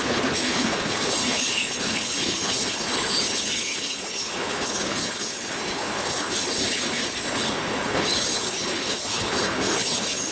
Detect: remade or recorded remade